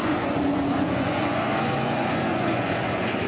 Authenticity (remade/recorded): remade